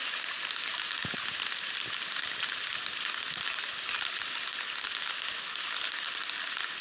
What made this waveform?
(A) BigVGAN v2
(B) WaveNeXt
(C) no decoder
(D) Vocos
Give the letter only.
C